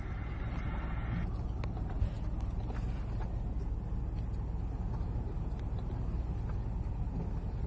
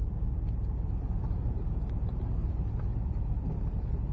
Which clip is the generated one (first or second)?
second